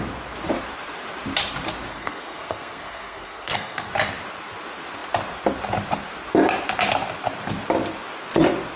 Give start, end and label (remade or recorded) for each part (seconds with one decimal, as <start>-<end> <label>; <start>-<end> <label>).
0.0-1.9 recorded; 1.9-3.9 remade; 3.9-8.8 recorded